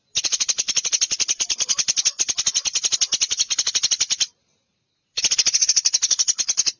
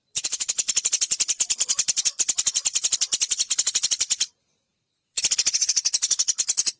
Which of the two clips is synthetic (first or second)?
second